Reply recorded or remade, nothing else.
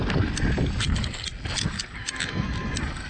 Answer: recorded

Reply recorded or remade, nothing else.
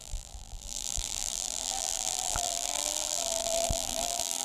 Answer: remade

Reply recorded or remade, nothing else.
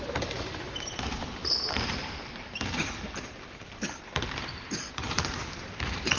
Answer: remade